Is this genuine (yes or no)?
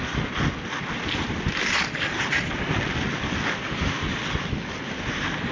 yes